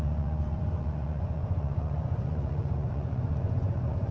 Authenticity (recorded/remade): remade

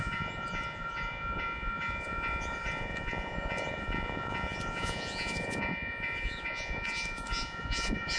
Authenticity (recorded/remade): remade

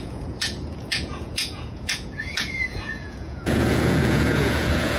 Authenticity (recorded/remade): remade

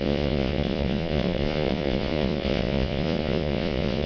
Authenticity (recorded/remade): remade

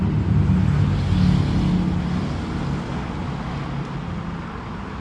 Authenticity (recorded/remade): recorded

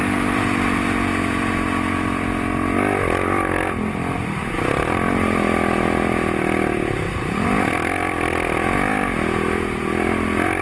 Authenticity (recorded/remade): recorded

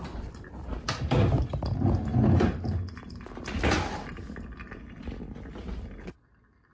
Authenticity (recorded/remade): recorded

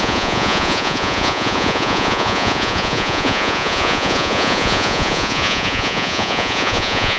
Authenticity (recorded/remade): remade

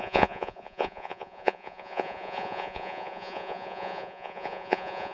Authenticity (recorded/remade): remade